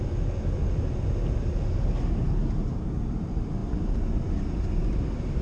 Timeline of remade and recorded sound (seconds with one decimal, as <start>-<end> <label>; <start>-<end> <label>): 0.0-5.4 recorded